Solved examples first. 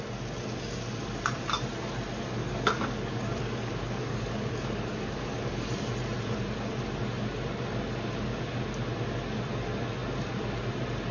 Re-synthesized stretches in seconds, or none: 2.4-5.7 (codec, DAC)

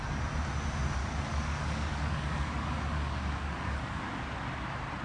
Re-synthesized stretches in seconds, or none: 1.0-4.0 (codec, DAC)

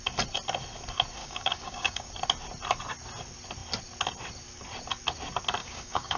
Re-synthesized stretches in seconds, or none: 1.2-2.1 (codec, DAC); 5.6-6.2

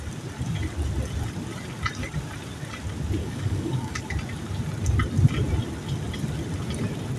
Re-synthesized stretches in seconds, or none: 3.2-4.0 (codec, DAC)